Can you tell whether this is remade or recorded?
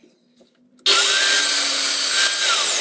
recorded